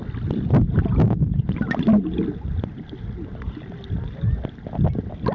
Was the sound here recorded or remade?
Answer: recorded